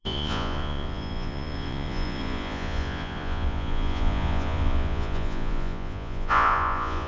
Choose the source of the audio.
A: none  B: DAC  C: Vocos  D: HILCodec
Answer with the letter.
C